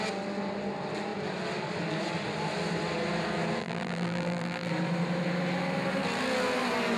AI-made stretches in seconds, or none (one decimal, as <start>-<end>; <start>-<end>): 3.6-4.7